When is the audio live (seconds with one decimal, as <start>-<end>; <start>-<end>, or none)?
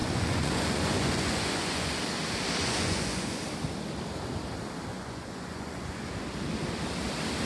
2.0-2.6; 3.4-4.9; 6.1-7.4